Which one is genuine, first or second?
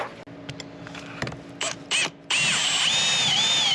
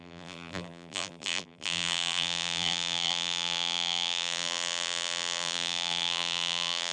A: first